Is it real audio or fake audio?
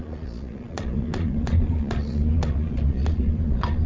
fake